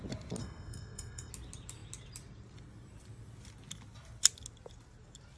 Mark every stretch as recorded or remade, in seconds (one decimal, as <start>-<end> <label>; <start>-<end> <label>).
0.0-0.4 recorded; 0.4-1.3 remade; 1.3-5.4 recorded